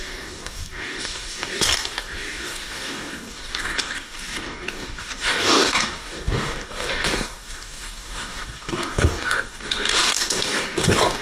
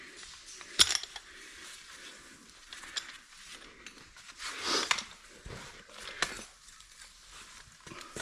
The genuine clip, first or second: second